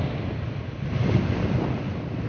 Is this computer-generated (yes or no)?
no